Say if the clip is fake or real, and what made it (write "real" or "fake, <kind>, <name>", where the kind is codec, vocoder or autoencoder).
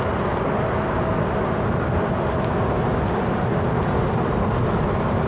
real